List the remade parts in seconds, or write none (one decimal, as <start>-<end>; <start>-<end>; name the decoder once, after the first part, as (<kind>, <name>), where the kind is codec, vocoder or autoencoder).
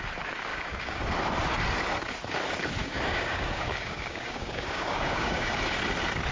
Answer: 0.5-1.0 (codec, DAC); 2.8-5.5